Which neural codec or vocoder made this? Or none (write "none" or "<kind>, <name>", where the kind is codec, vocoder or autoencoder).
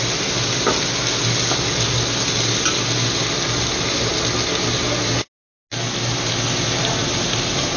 none